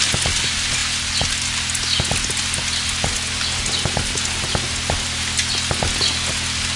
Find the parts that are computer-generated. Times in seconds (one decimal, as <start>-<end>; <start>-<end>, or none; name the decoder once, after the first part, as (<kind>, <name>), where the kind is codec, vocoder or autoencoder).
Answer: none